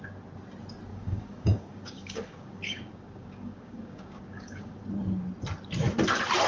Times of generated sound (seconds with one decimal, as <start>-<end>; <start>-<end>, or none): 0.9-4.8